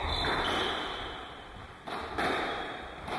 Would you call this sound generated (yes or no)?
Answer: no